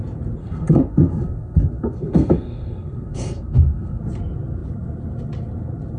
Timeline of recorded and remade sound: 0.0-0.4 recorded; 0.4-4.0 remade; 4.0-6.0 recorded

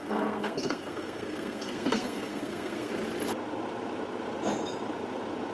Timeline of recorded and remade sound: 0.0-2.9 remade; 2.9-5.5 recorded

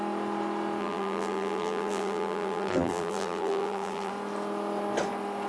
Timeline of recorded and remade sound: 0.0-0.8 recorded; 0.8-4.1 remade; 4.1-5.5 recorded

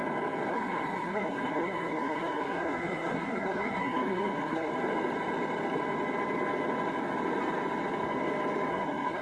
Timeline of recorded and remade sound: 0.0-0.5 recorded; 0.5-4.7 remade; 4.7-8.7 recorded; 8.7-9.2 remade

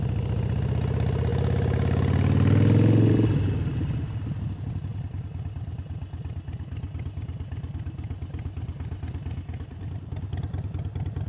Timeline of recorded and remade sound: 0.0-11.3 recorded

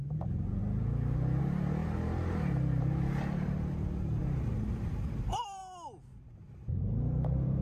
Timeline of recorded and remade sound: 0.0-0.6 remade; 0.6-1.4 recorded; 1.4-5.6 remade; 5.6-6.3 recorded; 6.3-7.6 remade